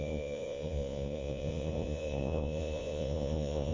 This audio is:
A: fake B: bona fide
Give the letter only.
A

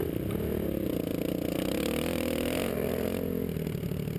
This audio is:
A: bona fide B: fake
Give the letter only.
A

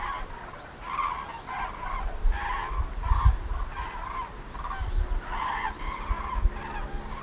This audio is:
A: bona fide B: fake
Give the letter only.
A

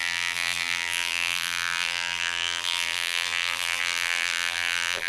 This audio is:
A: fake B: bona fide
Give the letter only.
A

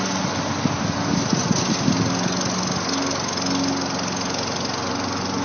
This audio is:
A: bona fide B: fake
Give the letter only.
A